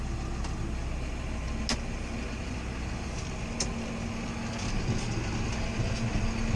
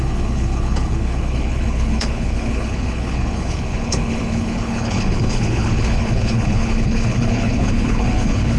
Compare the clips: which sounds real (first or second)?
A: first